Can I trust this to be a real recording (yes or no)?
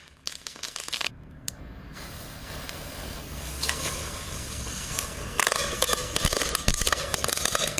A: no